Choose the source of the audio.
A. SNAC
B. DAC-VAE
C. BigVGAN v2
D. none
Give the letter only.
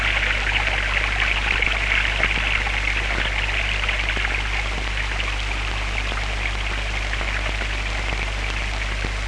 D